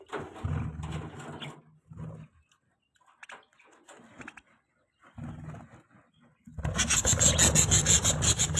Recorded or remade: recorded